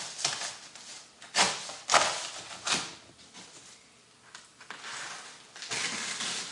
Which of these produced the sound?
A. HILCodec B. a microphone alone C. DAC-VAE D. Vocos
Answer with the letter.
B